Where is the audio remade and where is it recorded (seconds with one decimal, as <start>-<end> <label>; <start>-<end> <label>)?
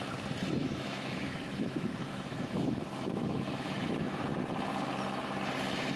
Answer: 0.0-0.6 recorded; 0.6-4.2 remade; 4.2-6.0 recorded